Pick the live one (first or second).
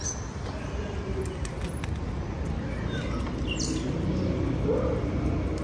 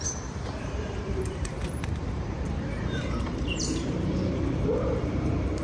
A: first